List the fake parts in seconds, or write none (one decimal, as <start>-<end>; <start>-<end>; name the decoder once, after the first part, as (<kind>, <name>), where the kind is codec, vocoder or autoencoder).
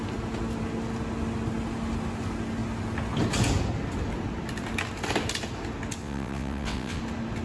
6.0-7.0 (vocoder, WaveNeXt)